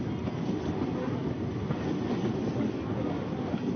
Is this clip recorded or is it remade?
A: recorded